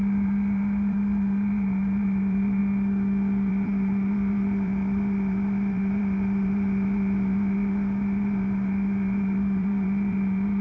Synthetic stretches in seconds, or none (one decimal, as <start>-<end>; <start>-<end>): 0.0-2.6; 3.5-10.6